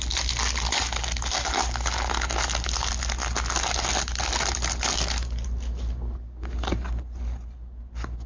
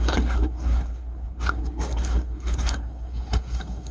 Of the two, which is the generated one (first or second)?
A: second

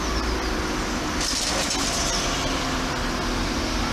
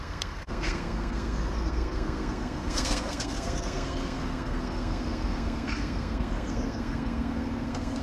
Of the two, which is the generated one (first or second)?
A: second